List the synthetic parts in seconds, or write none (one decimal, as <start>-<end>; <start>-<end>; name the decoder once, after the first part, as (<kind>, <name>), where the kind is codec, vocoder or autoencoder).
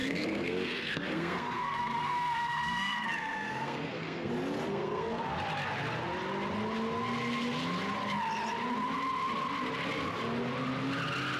0.0-4.3 (codec, SNAC); 4.7-5.2